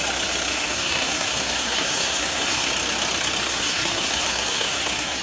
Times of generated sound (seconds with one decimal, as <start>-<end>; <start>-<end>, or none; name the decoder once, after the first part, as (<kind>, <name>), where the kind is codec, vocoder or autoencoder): 0.5-2.7 (codec, SNAC); 3.5-5.2